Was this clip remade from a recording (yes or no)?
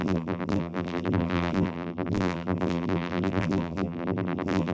yes